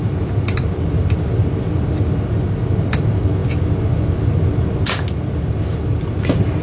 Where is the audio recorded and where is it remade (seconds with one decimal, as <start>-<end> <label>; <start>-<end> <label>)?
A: 0.0-6.6 recorded